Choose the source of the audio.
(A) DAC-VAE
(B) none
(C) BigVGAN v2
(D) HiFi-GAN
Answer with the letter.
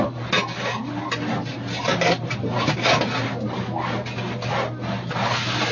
B